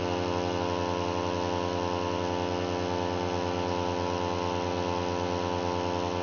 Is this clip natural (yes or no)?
yes